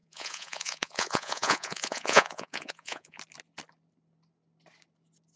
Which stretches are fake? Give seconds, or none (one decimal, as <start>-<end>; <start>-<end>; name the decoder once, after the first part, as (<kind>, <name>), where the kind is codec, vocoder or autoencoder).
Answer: 0.0-3.2 (vocoder, Vocos)